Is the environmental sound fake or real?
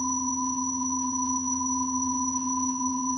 fake